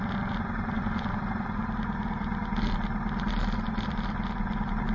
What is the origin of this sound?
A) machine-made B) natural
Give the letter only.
B